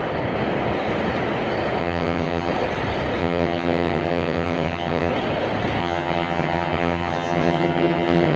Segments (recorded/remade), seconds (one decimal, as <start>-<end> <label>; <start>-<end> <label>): 0.0-1.8 recorded; 1.8-2.5 remade; 2.5-3.2 recorded; 3.2-5.1 remade; 5.1-5.8 recorded; 5.8-8.4 remade